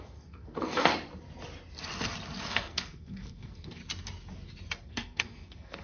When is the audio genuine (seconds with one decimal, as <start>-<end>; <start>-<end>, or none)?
0.9-2.5; 3.8-4.9